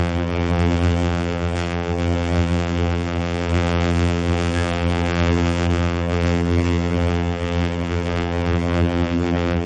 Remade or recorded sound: remade